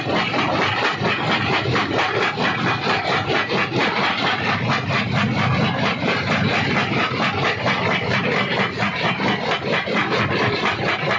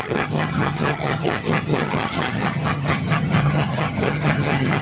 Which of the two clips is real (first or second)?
first